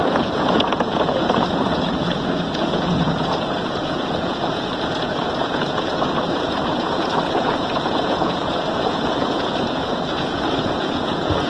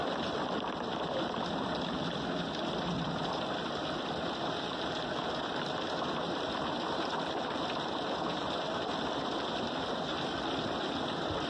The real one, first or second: second